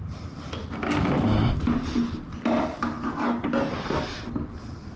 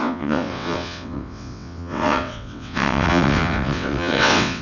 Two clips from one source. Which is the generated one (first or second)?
second